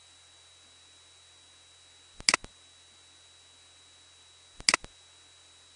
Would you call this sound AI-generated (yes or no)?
no